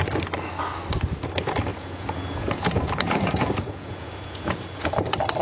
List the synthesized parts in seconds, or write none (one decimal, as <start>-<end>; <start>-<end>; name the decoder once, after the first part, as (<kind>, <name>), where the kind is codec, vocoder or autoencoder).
1.7-4.9 (vocoder, Vocos)